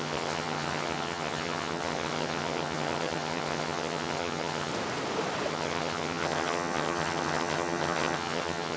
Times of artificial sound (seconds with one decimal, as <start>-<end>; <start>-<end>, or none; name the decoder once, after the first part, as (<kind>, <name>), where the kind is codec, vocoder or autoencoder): 0.0-4.7 (vocoder, HiFi-GAN); 5.5-8.8

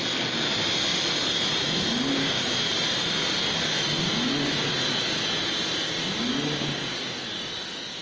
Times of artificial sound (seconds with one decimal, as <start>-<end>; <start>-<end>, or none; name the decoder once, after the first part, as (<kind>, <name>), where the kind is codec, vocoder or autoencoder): none

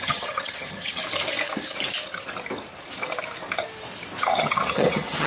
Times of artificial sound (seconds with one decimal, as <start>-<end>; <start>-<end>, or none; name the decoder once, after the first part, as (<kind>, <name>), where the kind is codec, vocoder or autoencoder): 0.0-1.0 (vocoder, HiFi-GAN); 4.2-5.3